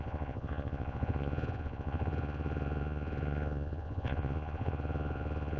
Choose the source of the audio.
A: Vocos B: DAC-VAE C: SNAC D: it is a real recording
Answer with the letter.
A